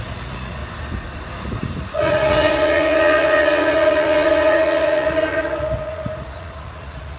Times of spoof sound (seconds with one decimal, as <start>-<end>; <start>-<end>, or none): 0.0-0.6; 1.4-7.2